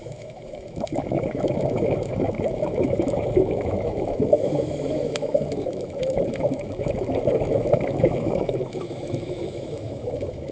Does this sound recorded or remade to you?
remade